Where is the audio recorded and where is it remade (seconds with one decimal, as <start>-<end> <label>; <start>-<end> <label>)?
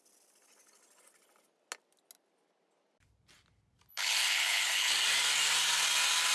0.0-3.9 recorded; 3.9-4.9 remade; 4.9-6.3 recorded